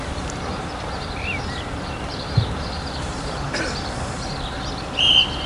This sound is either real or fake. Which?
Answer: fake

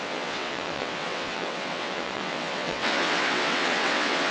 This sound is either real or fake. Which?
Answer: fake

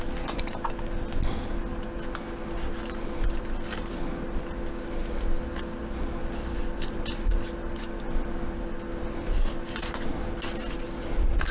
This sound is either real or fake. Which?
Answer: real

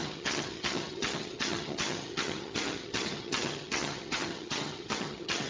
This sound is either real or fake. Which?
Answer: fake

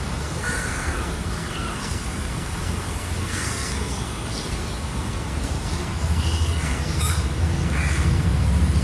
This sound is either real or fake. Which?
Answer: fake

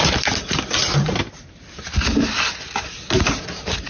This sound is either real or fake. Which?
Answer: real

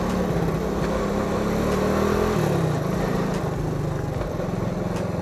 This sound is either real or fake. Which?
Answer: real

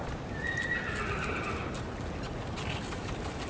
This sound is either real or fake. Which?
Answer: real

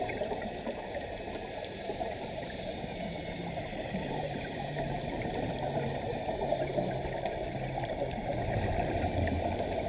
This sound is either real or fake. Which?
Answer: fake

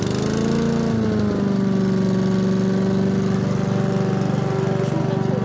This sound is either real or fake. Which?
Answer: real